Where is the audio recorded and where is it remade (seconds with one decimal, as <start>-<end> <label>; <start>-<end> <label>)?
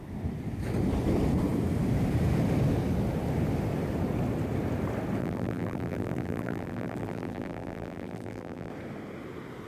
0.0-5.2 recorded; 5.2-8.7 remade; 8.7-9.7 recorded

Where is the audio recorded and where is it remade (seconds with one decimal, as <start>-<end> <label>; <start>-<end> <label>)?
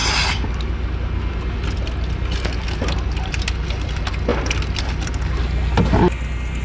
0.0-6.6 recorded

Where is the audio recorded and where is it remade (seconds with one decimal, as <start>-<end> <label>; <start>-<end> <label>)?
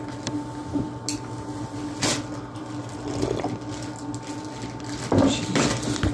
0.0-6.1 recorded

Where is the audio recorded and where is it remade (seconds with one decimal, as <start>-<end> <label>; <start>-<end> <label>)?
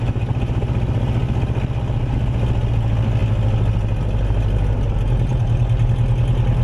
0.0-5.3 recorded; 5.3-5.9 remade; 5.9-6.6 recorded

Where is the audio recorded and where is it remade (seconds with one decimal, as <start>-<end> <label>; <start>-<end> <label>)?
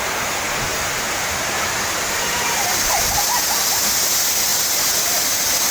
0.0-0.7 recorded; 0.7-3.9 remade; 3.9-4.5 recorded; 4.5-5.0 remade; 5.0-5.7 recorded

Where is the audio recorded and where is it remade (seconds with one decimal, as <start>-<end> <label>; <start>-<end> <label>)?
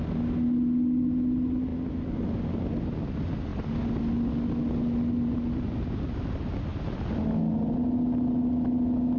0.0-3.5 recorded; 3.5-4.0 remade; 4.0-6.7 recorded; 6.7-7.4 remade; 7.4-9.2 recorded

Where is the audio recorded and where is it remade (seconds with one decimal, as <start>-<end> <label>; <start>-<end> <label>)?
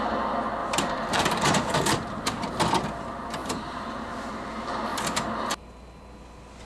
0.0-0.6 recorded; 0.6-2.6 remade; 2.6-3.4 recorded; 3.4-4.3 remade; 4.3-4.9 recorded; 4.9-5.4 remade; 5.4-6.6 recorded